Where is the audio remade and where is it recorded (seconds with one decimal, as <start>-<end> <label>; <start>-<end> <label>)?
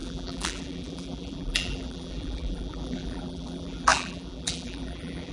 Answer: 0.0-5.3 remade